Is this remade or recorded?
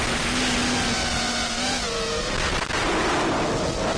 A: recorded